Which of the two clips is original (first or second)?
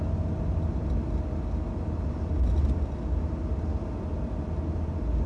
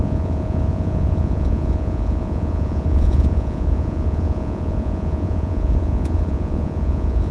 first